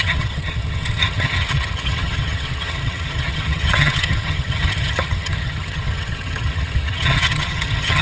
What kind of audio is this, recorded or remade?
remade